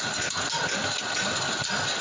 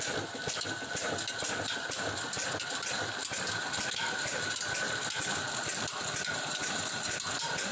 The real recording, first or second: first